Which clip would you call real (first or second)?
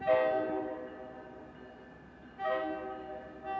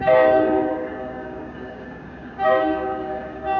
first